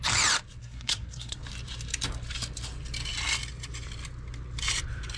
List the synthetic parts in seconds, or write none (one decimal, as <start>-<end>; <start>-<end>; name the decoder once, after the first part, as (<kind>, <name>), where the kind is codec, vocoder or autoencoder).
0.6-1.4 (codec, SNAC)